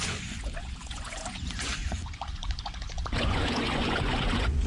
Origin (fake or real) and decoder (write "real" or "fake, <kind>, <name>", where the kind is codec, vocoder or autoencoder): fake, vocoder, Vocos